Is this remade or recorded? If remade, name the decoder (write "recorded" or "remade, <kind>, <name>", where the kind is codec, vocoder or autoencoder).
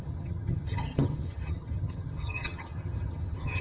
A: remade, vocoder, HiFi-GAN